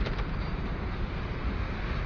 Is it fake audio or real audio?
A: real